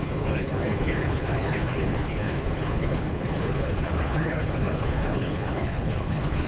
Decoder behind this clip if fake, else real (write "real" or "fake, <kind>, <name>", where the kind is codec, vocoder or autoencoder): fake, codec, HILCodec